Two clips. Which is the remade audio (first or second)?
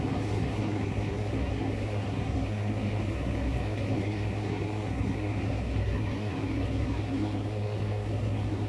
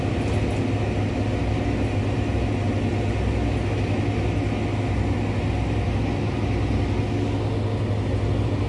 first